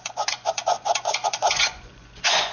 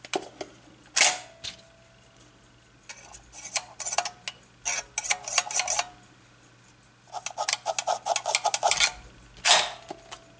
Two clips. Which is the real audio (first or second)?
second